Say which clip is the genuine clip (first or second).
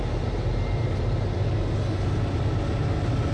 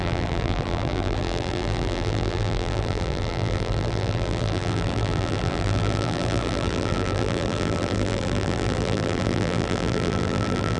first